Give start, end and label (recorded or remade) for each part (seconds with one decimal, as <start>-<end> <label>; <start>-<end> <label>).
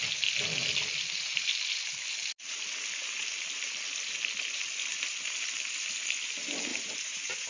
0.0-6.7 recorded; 6.7-7.5 remade